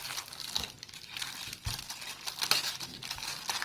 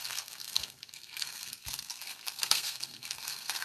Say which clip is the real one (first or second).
first